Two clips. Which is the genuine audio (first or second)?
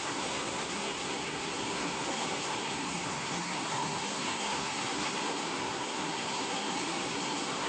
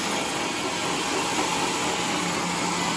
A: second